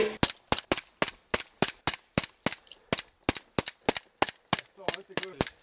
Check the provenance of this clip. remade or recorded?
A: recorded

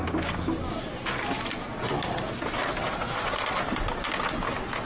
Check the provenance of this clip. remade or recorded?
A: recorded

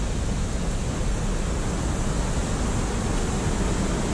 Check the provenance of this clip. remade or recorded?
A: recorded